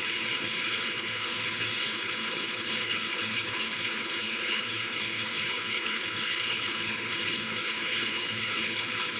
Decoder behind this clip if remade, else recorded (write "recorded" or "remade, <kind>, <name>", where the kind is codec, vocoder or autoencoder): remade, codec, HILCodec